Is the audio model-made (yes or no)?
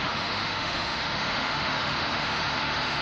yes